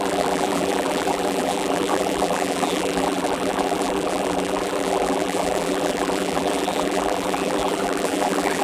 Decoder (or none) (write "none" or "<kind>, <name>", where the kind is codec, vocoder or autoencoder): vocoder, BigVGAN v2